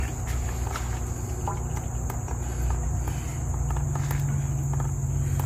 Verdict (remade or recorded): recorded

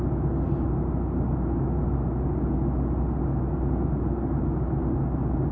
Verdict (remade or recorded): recorded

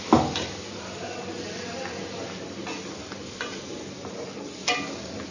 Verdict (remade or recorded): recorded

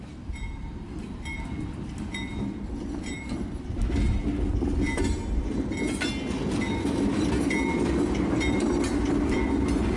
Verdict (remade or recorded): recorded